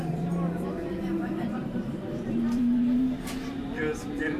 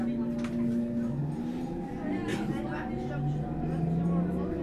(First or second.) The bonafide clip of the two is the second